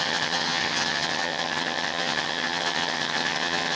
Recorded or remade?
remade